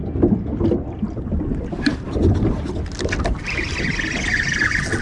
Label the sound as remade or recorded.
recorded